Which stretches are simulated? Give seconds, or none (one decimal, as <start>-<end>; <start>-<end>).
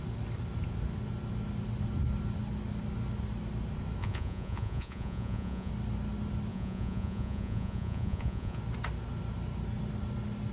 4.0-5.7; 6.5-8.6